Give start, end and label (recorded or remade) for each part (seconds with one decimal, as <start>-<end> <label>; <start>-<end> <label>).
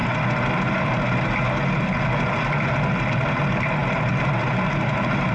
0.0-5.3 recorded